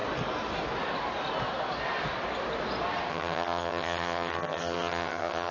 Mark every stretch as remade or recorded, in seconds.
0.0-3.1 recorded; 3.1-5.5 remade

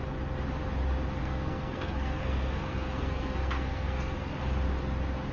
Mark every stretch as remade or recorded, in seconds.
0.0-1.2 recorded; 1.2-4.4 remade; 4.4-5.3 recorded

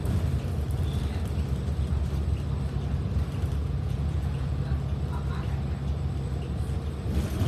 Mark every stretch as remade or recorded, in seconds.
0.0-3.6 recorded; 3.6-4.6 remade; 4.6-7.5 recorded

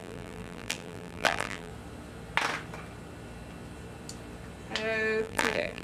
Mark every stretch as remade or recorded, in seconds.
0.0-1.7 remade; 1.7-5.2 recorded; 5.2-5.8 remade

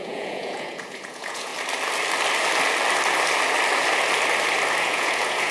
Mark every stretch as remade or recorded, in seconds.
0.0-1.5 remade; 1.5-4.8 recorded; 4.8-5.5 remade

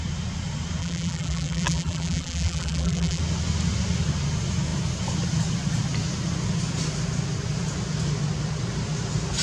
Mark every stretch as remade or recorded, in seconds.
0.0-0.8 recorded; 0.8-3.2 remade; 3.2-9.4 recorded